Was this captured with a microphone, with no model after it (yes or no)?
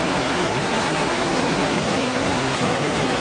no